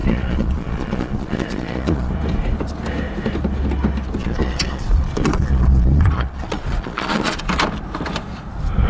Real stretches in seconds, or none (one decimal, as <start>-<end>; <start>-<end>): 2.1-4.2; 7.4-8.9